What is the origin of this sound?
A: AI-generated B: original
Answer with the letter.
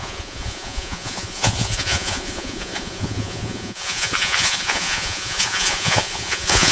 A